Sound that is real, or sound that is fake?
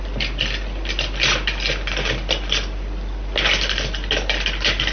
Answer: real